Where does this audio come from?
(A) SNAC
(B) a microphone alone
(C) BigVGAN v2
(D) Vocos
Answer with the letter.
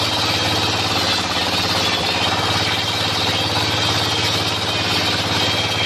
B